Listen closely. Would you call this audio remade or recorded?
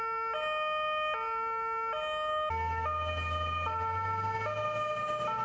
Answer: recorded